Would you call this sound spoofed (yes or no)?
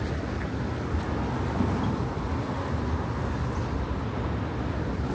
no